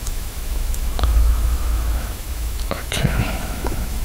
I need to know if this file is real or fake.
fake